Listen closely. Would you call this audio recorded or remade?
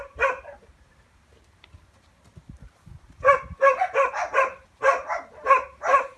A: remade